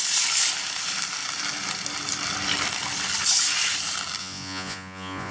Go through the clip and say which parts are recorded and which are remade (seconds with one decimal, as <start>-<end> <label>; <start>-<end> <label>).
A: 0.0-4.2 recorded; 4.2-5.3 remade